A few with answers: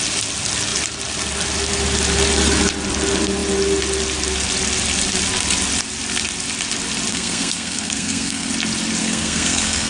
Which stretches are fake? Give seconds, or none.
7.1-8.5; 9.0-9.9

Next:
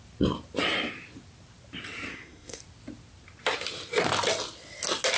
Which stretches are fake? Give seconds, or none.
2.1-2.6

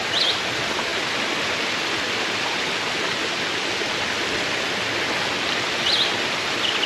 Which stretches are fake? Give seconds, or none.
none

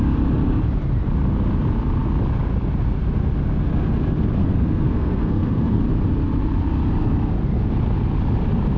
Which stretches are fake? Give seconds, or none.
4.4-5.8

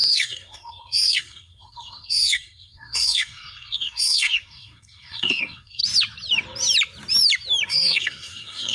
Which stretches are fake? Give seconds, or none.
0.0-5.8; 7.7-8.7

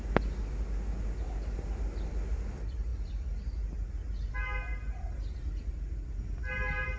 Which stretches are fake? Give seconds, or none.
none